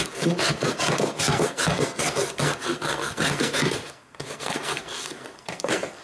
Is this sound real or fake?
fake